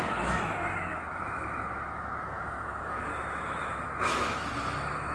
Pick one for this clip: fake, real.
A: fake